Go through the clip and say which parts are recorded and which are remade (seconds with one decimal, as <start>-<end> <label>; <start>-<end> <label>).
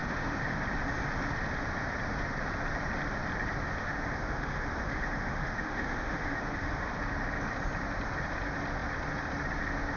0.0-0.5 remade; 0.5-3.8 recorded; 3.8-6.9 remade; 6.9-10.0 recorded